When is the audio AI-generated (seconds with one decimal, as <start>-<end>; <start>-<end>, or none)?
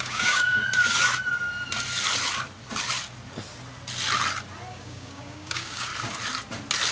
0.0-0.6; 4.7-5.9